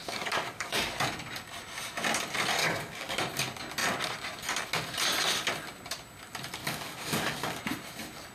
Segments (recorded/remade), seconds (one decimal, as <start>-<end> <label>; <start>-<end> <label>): 0.0-0.9 remade; 0.9-2.6 recorded; 2.6-3.2 remade; 3.2-6.6 recorded; 6.6-7.6 remade; 7.6-8.3 recorded